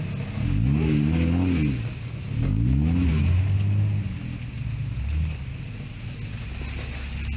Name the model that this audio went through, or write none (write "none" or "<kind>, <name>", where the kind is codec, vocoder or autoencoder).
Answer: none